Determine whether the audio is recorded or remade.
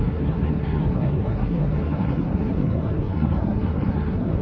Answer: remade